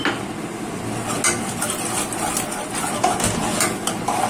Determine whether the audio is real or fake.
real